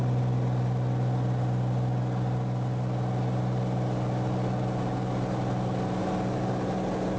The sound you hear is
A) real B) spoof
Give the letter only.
A